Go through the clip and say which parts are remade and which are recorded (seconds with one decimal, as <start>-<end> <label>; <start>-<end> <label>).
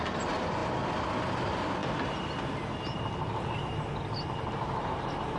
0.0-5.4 recorded